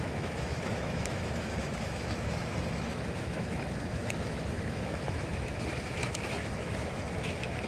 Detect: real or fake fake